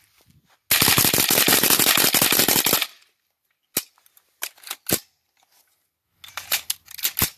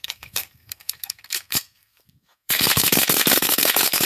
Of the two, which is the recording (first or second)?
first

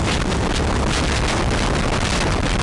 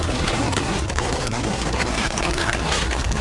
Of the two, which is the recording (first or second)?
first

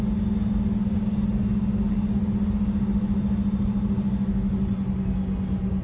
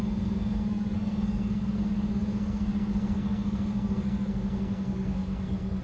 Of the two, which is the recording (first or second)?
first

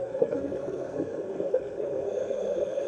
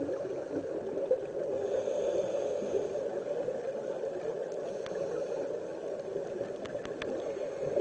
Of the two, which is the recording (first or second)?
second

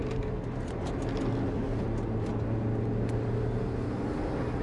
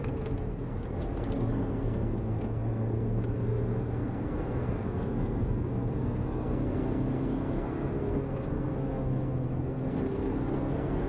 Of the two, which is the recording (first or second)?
first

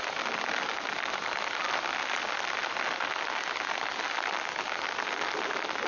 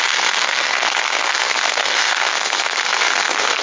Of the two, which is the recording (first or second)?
first